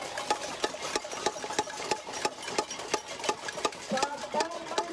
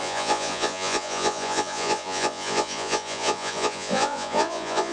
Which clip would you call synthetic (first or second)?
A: second